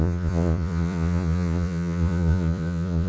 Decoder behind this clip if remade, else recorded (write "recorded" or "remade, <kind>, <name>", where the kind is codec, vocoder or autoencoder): remade, vocoder, Vocos